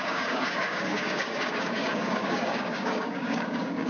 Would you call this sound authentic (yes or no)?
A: no